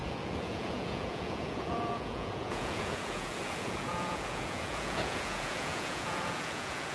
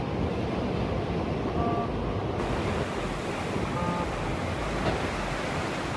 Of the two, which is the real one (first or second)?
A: second